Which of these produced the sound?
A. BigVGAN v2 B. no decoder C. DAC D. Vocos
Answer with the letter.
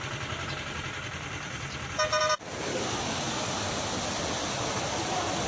B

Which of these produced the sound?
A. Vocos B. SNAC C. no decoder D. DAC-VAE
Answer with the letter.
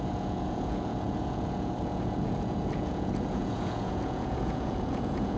A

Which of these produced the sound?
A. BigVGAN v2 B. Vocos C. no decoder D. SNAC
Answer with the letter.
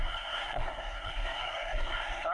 D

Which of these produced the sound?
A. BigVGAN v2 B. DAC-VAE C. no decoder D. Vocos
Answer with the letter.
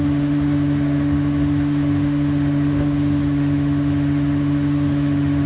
B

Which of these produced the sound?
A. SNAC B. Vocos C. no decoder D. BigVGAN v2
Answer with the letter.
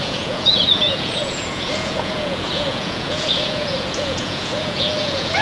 B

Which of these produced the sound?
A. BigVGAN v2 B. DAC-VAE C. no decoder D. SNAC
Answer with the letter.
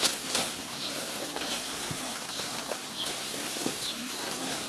D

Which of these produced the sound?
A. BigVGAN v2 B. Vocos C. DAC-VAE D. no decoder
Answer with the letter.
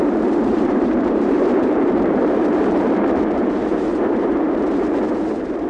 A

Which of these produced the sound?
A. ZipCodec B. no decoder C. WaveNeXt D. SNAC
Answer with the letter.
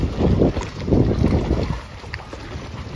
B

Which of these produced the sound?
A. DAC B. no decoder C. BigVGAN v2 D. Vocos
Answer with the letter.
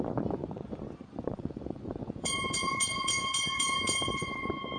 D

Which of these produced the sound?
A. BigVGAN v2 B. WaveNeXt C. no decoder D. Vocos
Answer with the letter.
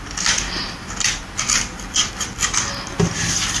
C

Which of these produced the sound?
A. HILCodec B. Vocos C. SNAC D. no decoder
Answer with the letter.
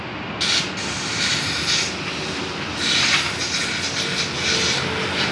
D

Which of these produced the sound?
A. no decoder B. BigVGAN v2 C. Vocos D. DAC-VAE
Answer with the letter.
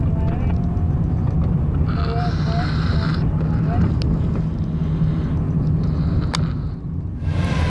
A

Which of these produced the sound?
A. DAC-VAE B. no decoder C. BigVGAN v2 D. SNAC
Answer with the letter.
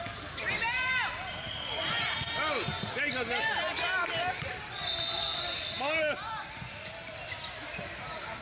B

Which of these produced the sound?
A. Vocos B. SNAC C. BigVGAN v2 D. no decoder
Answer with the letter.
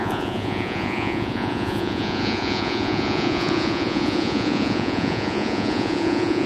A